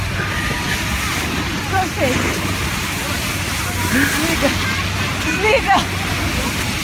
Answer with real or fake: real